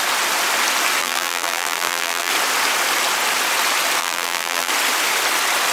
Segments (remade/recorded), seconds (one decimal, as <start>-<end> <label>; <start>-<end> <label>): 0.0-1.0 recorded; 1.0-2.3 remade; 2.3-4.0 recorded; 4.0-4.7 remade; 4.7-5.7 recorded